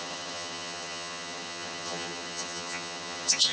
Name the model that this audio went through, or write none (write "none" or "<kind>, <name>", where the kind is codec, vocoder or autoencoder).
vocoder, HiFi-GAN